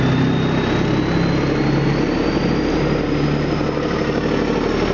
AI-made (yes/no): no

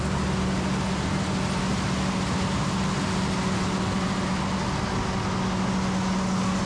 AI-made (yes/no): no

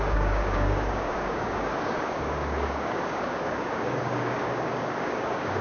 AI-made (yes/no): yes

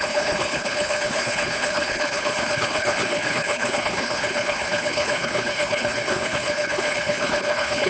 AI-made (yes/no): yes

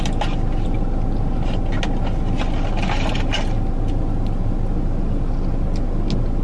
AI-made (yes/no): no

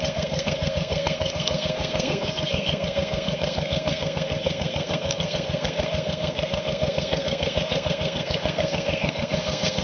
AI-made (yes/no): yes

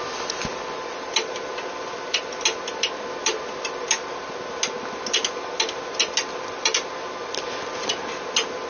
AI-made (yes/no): no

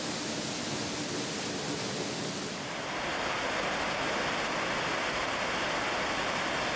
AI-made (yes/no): no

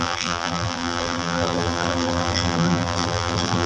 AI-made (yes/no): yes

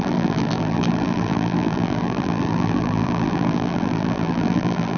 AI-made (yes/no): yes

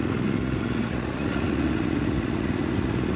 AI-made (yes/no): yes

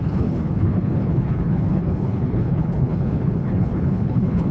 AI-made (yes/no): yes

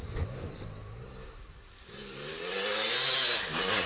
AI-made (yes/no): no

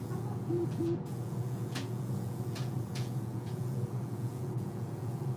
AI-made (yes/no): yes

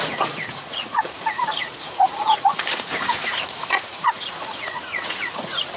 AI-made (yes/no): yes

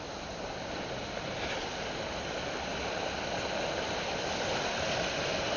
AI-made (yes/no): no